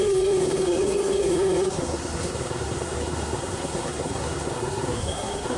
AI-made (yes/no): yes